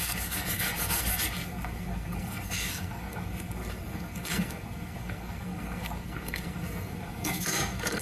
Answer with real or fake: fake